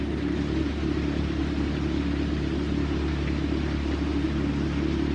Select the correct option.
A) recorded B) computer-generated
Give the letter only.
A